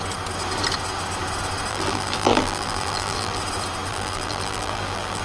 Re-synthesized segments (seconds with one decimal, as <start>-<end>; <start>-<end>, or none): 1.7-3.4; 3.9-5.2